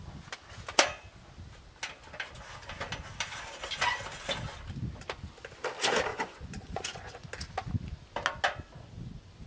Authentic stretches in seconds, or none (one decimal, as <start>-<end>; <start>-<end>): 0.0-6.1; 7.3-9.5